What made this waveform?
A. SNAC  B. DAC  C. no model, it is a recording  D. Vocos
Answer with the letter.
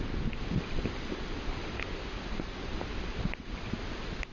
C